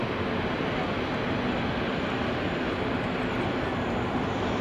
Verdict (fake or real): real